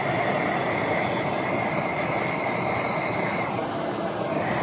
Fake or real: fake